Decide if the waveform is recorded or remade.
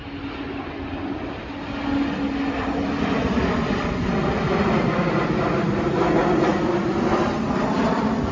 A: recorded